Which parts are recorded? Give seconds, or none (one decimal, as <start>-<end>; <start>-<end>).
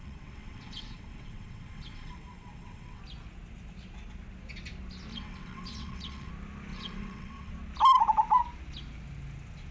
3.0-5.1; 6.3-6.7; 7.5-9.7